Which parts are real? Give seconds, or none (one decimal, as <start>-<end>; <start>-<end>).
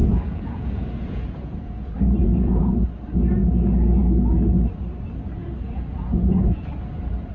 2.7-5.4; 6.7-7.3